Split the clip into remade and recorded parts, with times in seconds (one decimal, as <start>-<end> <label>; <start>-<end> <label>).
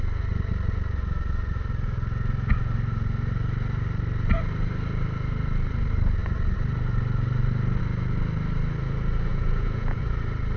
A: 0.0-9.3 recorded; 9.3-10.0 remade; 10.0-10.6 recorded